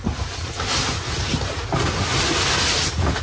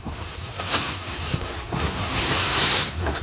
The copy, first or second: second